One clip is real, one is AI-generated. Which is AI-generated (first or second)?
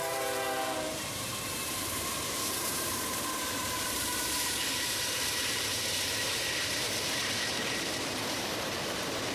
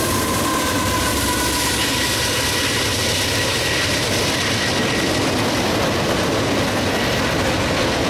first